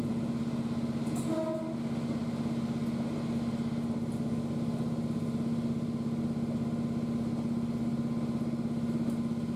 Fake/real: real